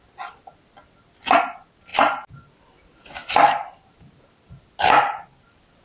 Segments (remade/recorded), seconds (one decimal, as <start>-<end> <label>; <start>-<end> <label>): 0.0-5.8 recorded